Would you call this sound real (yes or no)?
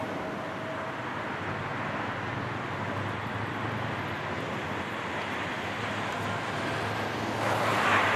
yes